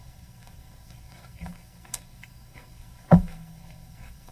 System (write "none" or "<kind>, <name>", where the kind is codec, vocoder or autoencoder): codec, SNAC